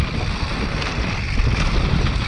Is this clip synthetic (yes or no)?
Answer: no